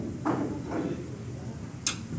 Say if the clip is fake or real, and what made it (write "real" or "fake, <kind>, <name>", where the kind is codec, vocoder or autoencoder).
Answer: real